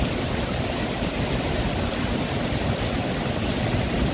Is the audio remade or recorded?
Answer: recorded